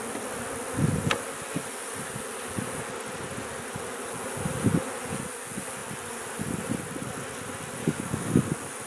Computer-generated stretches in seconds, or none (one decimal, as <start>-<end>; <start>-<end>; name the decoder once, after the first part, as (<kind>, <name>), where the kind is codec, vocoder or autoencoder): 7.8-8.4 (codec, DAC)

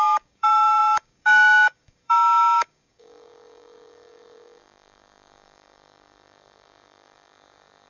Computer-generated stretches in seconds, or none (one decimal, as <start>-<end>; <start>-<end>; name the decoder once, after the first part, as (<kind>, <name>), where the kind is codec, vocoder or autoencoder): 0.0-7.9 (codec, DAC)